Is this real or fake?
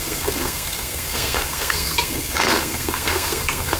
fake